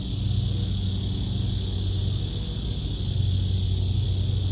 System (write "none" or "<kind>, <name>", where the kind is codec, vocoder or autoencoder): none